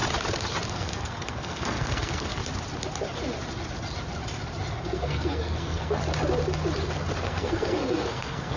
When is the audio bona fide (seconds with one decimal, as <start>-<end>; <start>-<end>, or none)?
0.0-0.7; 2.4-4.7; 6.0-7.2